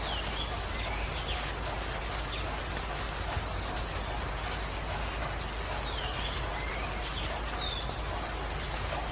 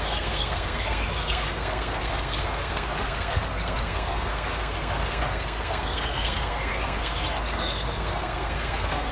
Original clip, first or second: first